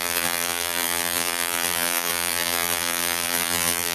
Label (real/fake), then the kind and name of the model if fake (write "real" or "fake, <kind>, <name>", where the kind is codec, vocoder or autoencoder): fake, vocoder, BigVGAN v2